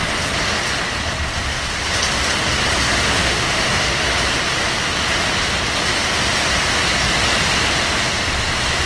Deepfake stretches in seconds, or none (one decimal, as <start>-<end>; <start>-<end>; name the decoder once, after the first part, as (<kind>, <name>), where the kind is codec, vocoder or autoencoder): 3.2-4.0 (autoencoder, DAC-VAE)